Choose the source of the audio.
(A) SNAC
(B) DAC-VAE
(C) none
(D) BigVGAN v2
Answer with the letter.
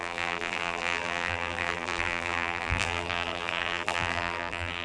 D